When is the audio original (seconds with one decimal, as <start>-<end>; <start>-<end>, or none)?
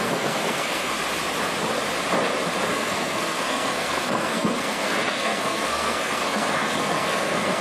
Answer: 0.9-2.7